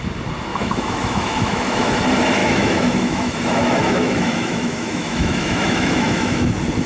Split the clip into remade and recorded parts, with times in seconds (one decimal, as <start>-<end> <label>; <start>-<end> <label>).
0.0-0.5 recorded; 0.5-2.0 remade; 2.0-2.4 recorded; 2.4-6.5 remade; 6.5-6.9 recorded